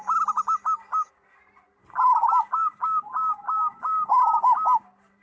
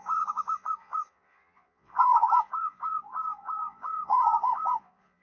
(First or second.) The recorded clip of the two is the first